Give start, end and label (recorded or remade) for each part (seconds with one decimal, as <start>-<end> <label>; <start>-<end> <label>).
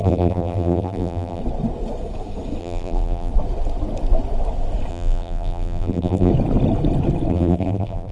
0.0-1.4 remade; 1.4-2.6 recorded; 2.6-3.3 remade; 3.3-4.9 recorded; 4.9-6.3 remade; 6.3-7.3 recorded; 7.3-8.1 remade